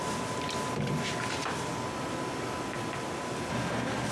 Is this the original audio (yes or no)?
yes